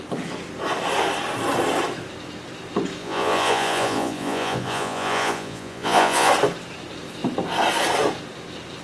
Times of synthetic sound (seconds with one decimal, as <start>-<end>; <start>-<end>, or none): 3.0-6.3